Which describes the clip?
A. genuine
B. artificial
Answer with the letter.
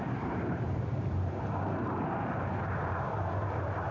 B